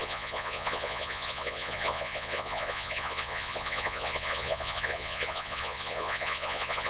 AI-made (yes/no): yes